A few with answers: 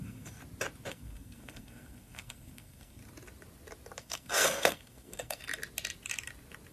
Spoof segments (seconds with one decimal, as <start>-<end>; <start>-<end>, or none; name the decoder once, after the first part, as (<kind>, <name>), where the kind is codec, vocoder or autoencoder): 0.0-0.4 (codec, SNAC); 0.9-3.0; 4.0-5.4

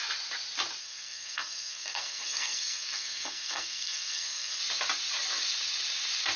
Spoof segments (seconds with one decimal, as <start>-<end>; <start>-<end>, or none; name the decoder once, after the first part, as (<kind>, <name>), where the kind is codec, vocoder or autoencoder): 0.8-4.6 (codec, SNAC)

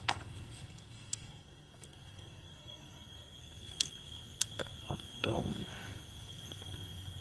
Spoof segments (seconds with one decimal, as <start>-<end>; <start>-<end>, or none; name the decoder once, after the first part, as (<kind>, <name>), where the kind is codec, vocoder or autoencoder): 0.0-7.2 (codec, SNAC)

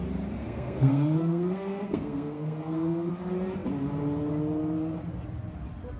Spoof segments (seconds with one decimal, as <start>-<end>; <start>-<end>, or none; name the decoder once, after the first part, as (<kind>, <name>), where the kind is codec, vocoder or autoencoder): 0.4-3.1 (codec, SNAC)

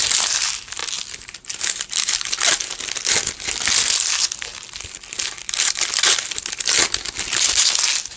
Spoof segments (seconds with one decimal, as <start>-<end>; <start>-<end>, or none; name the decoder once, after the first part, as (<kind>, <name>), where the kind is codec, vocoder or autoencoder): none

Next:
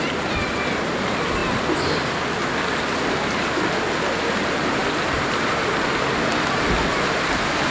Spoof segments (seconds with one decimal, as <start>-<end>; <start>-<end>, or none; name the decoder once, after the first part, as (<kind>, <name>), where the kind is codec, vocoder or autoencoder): none